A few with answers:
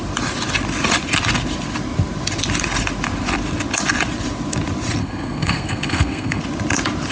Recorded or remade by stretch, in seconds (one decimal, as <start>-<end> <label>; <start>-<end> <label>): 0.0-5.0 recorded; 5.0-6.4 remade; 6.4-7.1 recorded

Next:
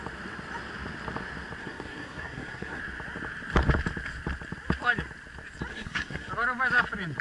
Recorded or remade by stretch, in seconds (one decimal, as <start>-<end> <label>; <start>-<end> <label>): 0.0-1.6 recorded; 1.6-2.8 remade; 2.8-5.7 recorded; 5.7-6.3 remade; 6.3-7.2 recorded

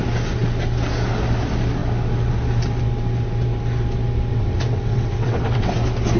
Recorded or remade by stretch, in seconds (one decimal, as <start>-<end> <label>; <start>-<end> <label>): 0.0-4.3 recorded; 4.3-5.7 remade; 5.7-6.2 recorded